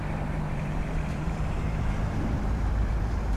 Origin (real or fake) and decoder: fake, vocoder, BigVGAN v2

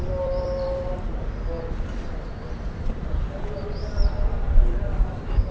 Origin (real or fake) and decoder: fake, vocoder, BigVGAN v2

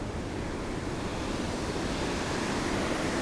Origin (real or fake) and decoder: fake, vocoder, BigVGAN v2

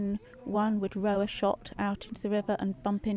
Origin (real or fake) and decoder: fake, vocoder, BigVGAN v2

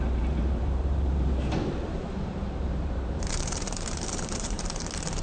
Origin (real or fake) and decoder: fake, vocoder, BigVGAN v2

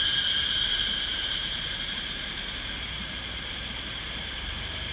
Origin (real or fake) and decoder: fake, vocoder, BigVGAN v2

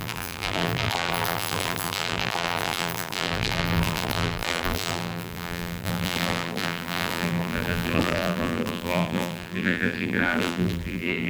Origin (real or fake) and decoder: fake, vocoder, BigVGAN v2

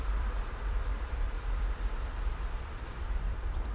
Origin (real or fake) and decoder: fake, vocoder, BigVGAN v2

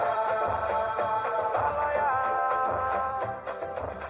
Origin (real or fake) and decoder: fake, vocoder, BigVGAN v2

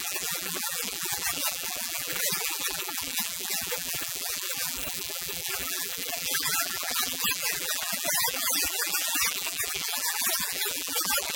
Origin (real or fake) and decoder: fake, vocoder, BigVGAN v2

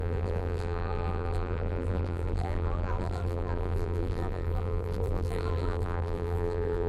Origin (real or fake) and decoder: fake, vocoder, BigVGAN v2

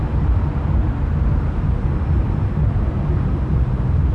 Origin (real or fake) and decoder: real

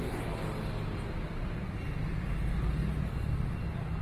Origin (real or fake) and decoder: real